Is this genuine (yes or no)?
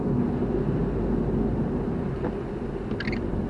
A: yes